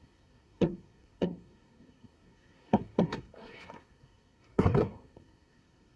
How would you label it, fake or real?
fake